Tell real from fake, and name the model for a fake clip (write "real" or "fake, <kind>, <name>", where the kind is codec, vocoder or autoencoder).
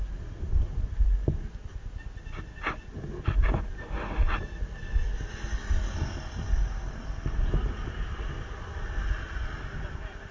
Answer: real